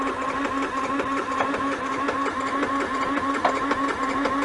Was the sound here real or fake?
real